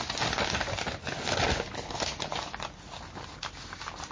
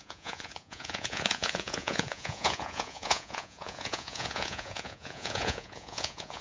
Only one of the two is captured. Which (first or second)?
first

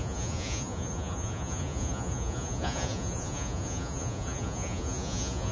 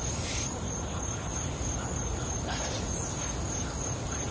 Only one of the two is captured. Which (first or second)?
second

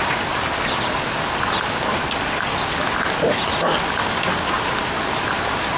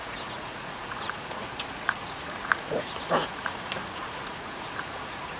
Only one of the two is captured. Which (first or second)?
first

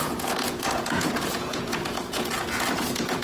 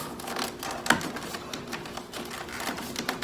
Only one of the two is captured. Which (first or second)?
second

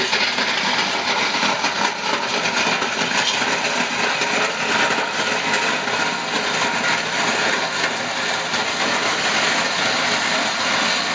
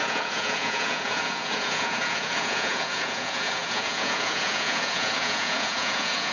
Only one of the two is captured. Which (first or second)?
first